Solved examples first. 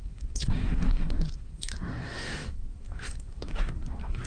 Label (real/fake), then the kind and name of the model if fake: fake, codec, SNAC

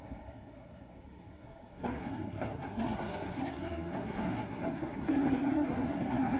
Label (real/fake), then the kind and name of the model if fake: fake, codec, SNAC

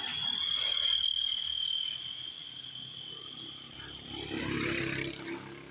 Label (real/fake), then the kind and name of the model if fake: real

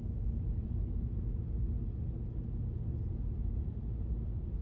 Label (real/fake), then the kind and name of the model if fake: real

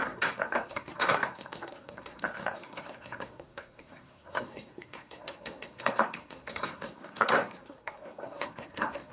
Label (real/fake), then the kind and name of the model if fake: fake, codec, SNAC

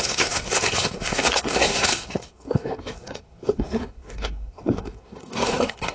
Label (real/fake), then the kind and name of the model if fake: fake, codec, SNAC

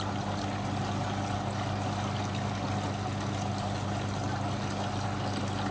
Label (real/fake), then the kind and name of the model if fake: real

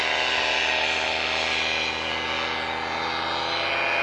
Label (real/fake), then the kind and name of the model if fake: real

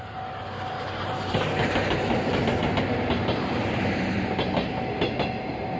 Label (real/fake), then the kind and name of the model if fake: real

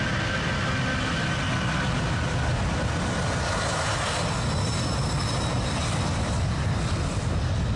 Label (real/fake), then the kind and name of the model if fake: real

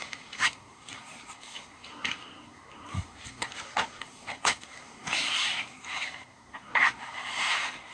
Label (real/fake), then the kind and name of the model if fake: fake, codec, SNAC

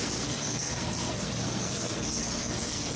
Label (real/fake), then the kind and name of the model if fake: fake, codec, SNAC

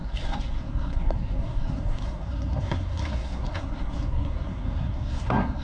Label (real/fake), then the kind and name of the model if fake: fake, codec, SNAC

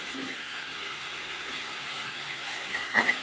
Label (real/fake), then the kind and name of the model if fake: fake, codec, SNAC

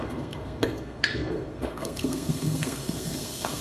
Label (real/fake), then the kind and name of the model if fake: fake, codec, SNAC